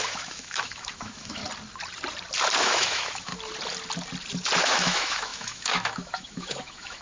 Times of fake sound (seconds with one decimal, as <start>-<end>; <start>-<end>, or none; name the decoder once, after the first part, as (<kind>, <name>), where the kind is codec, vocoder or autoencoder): 0.0-1.4 (autoencoder, DAC-VAE); 2.6-3.3; 4.6-7.0